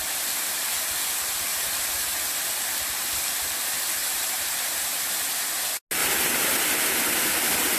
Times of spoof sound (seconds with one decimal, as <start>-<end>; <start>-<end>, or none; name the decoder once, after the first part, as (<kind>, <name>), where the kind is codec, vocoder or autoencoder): 1.5-2.4 (vocoder, BigVGAN v2); 4.0-5.0; 6.0-6.6

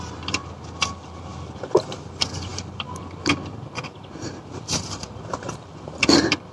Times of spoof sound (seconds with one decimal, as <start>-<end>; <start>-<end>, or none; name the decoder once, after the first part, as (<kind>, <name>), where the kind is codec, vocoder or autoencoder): 0.0-6.5 (vocoder, BigVGAN v2)

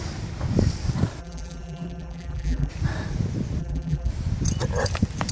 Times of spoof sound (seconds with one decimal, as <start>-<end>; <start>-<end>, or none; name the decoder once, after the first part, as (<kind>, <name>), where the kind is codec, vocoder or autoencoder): 1.2-2.7 (vocoder, BigVGAN v2); 3.6-4.1